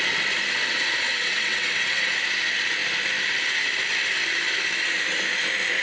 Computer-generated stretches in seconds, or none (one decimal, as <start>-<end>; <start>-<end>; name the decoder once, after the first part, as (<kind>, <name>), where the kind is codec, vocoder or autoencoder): 1.1-2.1 (vocoder, WaveNeXt)